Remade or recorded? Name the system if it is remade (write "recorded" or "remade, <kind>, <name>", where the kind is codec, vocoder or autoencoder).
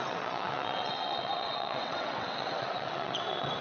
remade, vocoder, WaveNeXt